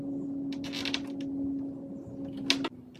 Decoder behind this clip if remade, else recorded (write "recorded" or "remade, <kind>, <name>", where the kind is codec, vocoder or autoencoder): recorded